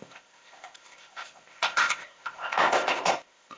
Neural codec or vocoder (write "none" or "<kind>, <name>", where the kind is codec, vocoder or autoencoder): codec, ZipCodec